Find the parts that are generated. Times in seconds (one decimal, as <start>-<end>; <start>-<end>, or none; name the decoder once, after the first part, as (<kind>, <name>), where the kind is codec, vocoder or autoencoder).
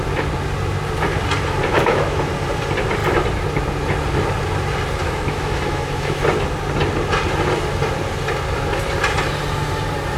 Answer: 1.7-2.3 (autoencoder, DAC-VAE); 5.0-6.2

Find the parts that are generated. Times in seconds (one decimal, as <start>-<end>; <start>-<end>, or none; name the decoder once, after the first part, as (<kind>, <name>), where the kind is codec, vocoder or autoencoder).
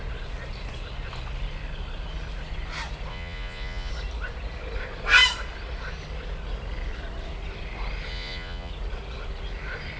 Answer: 3.1-3.9 (vocoder, Vocos); 8.1-8.7